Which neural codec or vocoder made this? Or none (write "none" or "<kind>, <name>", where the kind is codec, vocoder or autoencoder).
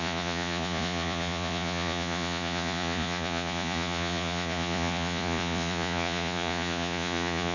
vocoder, Vocos